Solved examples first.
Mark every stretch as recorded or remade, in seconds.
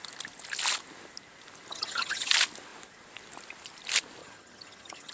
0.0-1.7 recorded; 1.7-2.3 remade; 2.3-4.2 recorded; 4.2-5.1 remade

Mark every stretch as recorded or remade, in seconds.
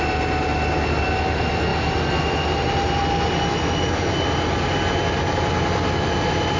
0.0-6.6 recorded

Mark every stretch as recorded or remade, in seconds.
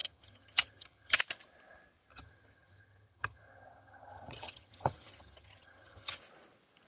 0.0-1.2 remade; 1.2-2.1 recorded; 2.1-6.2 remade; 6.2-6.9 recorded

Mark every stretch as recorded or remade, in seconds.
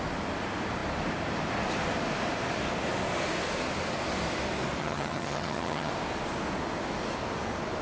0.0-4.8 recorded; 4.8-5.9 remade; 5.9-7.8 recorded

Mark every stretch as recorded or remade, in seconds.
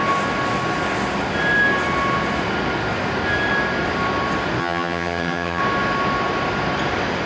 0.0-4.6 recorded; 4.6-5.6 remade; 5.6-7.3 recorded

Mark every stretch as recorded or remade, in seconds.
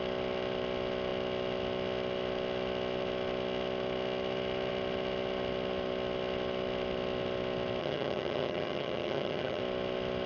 0.0-7.8 recorded; 7.8-9.6 remade; 9.6-10.3 recorded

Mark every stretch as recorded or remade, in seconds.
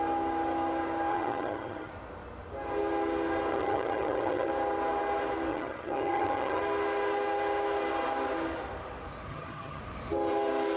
0.0-1.1 recorded; 1.1-1.9 remade; 1.9-3.5 recorded; 3.5-4.5 remade; 4.5-5.5 recorded; 5.5-6.6 remade; 6.6-9.3 recorded; 9.3-9.8 remade; 9.8-10.8 recorded